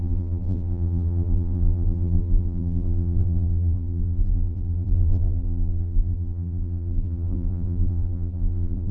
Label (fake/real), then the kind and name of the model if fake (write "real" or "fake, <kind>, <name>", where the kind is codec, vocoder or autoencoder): fake, vocoder, BigVGAN v2